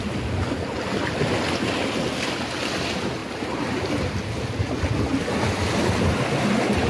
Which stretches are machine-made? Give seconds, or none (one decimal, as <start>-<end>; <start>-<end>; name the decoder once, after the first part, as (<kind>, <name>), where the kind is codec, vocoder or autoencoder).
none